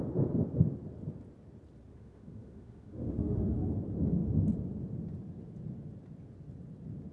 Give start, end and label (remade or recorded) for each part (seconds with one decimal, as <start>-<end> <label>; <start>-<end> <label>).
0.0-1.9 recorded; 1.9-3.7 remade; 3.7-7.1 recorded